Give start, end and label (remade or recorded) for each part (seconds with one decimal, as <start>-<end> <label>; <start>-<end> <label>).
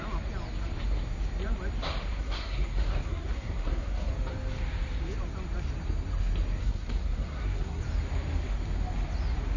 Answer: 0.0-2.1 recorded; 2.1-4.1 remade; 4.1-6.6 recorded; 6.6-7.8 remade; 7.8-9.6 recorded